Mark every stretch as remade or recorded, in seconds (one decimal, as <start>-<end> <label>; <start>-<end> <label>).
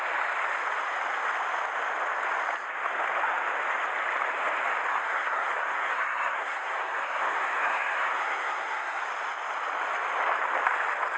0.0-4.9 recorded; 4.9-9.0 remade; 9.0-11.2 recorded